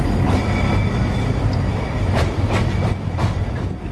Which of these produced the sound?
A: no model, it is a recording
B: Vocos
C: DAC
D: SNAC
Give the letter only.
A